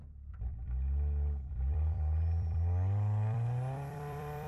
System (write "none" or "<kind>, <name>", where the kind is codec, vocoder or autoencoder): vocoder, BigVGAN v2